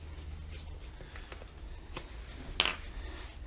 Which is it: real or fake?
real